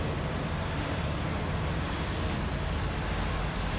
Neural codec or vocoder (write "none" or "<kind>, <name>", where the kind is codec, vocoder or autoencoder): vocoder, BigVGAN v2